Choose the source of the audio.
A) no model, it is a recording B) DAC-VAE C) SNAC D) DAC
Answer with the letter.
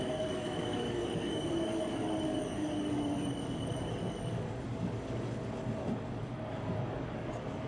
D